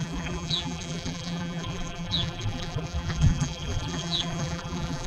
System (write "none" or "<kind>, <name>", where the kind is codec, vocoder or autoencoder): vocoder, BigVGAN v2